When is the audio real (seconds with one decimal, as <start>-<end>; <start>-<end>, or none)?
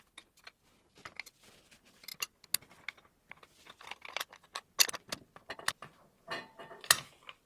0.0-7.5